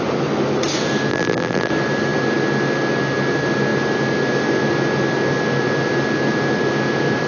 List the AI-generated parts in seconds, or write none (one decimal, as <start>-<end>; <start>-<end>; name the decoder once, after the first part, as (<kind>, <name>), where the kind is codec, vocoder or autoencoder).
1.1-1.7 (vocoder, BigVGAN v2)